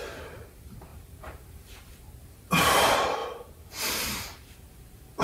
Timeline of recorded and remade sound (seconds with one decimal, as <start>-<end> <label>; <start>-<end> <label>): 0.0-3.2 remade; 3.2-3.8 recorded; 3.8-5.2 remade